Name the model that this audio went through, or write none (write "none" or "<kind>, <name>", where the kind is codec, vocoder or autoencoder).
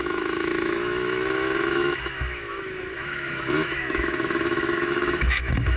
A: autoencoder, DAC-VAE